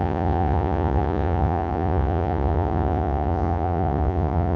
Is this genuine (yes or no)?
no